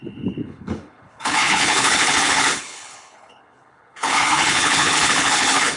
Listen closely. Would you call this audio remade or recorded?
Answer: remade